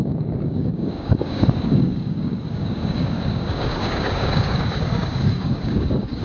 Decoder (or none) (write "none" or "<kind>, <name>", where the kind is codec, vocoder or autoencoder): codec, DAC